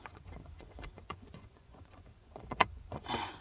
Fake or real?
fake